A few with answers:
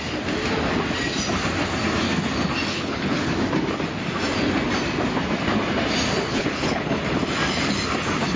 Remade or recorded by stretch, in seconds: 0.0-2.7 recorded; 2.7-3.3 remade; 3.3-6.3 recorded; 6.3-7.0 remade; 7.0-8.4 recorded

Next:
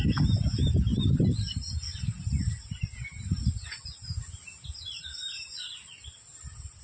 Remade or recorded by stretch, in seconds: 0.0-6.8 recorded

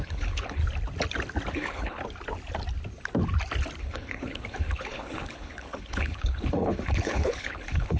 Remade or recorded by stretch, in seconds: 0.0-0.6 remade; 0.6-1.5 recorded; 1.5-2.0 remade; 2.0-3.8 recorded; 3.8-8.0 remade

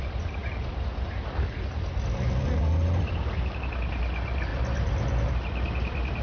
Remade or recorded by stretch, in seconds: 0.0-6.2 recorded

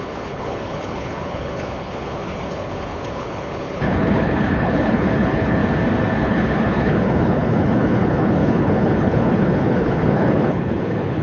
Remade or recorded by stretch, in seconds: 0.0-5.6 remade; 5.6-6.2 recorded; 6.2-11.2 remade